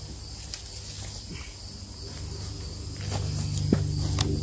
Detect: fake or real real